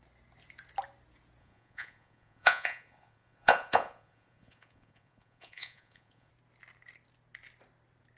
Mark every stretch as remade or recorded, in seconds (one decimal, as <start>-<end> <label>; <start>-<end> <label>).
0.0-1.4 recorded; 1.4-6.3 remade; 6.3-8.2 recorded